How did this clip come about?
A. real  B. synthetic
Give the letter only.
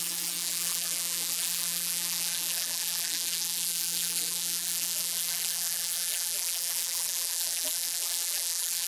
B